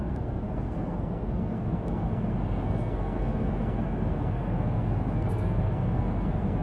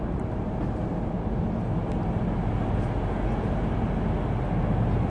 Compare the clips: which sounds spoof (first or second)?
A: first